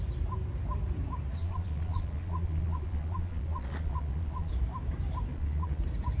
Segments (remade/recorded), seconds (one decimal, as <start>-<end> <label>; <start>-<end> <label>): 0.0-1.4 recorded; 1.4-4.5 remade; 4.5-5.3 recorded; 5.3-5.8 remade; 5.8-6.2 recorded